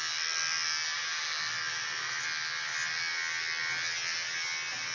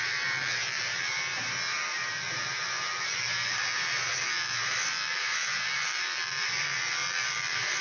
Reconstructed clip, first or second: second